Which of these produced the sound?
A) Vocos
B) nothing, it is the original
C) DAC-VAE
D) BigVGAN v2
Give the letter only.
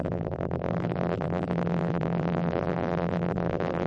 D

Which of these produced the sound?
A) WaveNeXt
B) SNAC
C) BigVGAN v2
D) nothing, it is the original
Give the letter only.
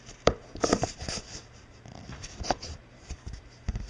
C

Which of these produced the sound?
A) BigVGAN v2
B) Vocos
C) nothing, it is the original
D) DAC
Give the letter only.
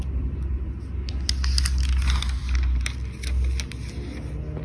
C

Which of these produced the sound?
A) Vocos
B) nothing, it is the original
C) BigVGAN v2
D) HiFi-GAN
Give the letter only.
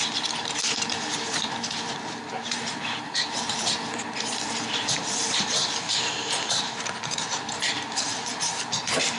C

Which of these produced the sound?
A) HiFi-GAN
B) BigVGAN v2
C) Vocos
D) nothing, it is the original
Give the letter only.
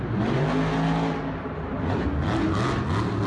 D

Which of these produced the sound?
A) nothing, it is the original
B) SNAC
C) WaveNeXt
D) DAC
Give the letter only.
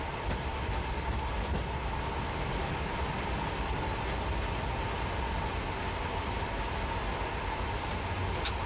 A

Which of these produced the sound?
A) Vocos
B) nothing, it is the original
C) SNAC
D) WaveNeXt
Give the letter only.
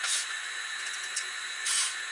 A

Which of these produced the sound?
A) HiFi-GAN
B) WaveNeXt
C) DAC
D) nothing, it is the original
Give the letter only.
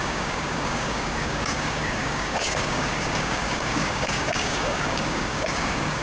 C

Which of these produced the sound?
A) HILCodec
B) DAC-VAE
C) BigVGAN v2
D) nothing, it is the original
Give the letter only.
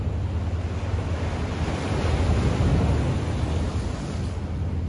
D